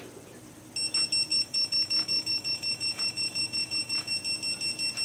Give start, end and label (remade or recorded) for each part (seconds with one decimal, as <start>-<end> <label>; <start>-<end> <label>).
0.0-1.3 recorded; 1.3-4.1 remade; 4.1-5.0 recorded